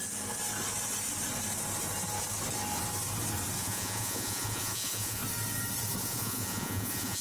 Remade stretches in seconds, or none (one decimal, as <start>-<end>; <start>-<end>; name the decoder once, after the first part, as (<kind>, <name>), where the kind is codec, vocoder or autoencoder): 3.6-5.2 (vocoder, Vocos); 6.0-7.2